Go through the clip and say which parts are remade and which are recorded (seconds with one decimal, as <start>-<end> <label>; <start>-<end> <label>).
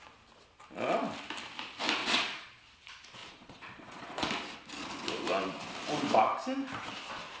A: 0.0-2.0 recorded; 2.0-2.6 remade; 2.6-3.2 recorded; 3.2-4.3 remade; 4.3-7.4 recorded